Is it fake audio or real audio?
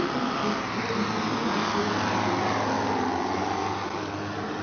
real